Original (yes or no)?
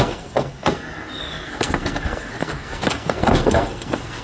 no